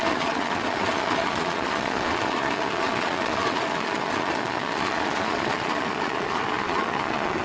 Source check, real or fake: fake